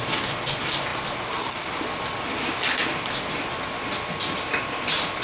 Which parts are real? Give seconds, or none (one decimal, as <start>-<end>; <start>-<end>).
0.0-5.2